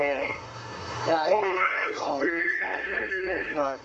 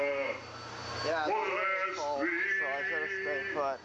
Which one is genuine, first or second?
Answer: second